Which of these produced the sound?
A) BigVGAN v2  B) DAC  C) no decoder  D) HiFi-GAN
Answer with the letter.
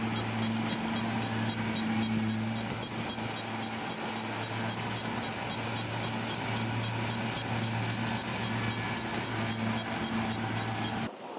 C